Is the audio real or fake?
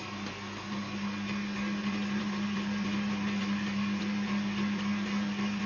real